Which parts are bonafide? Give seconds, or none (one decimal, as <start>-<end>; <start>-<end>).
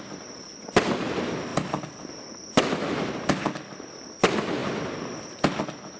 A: 0.0-6.0